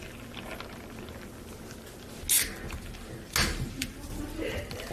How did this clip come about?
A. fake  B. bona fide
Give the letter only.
B